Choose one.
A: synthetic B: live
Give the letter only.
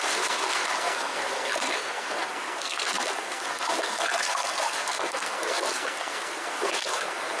A